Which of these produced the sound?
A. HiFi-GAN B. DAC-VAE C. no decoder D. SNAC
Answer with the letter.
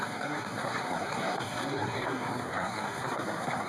D